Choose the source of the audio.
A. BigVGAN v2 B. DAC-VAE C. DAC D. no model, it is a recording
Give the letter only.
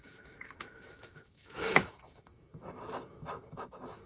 B